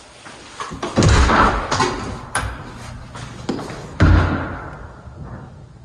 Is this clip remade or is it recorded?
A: recorded